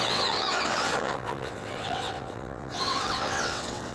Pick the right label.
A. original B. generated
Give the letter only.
B